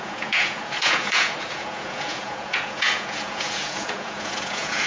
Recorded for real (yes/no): no